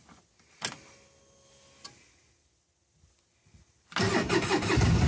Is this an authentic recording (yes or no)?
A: yes